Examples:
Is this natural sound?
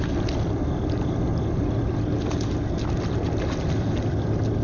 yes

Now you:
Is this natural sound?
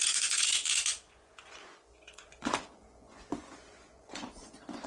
no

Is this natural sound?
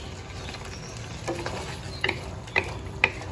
yes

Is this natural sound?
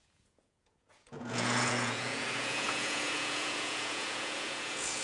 no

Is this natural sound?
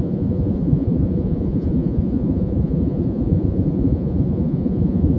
no